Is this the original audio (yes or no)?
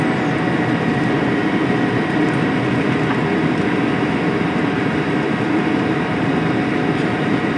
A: yes